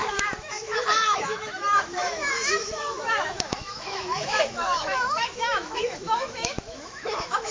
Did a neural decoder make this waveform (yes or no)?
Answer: yes